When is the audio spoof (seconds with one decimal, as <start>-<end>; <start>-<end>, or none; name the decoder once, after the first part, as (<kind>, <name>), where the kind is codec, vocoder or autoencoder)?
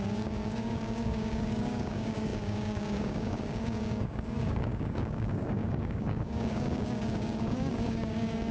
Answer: 0.0-8.5 (codec, DAC)